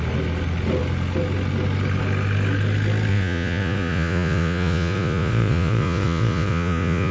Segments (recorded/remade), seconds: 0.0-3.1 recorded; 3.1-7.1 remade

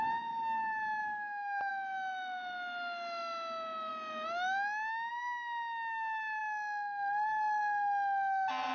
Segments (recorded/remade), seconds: 0.0-1.0 recorded; 1.0-1.7 remade; 1.7-8.7 recorded

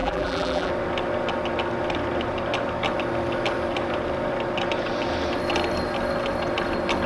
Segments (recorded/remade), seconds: 0.0-0.7 remade; 0.7-7.1 recorded

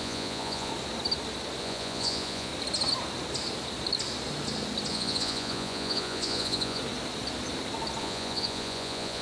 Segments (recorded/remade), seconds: 0.0-0.7 remade; 0.7-1.6 recorded; 1.6-2.5 remade; 2.5-4.9 recorded; 4.9-6.8 remade; 6.8-8.0 recorded; 8.0-9.2 remade

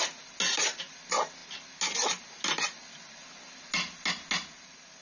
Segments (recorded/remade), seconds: 0.0-5.0 recorded